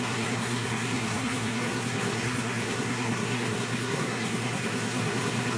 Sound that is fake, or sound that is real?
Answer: fake